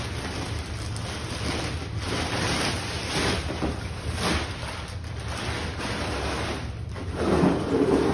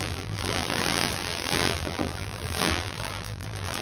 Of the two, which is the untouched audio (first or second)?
first